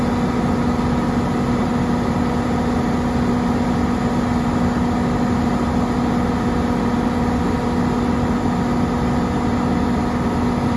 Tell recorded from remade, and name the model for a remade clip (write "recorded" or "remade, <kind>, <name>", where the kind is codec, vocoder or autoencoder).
recorded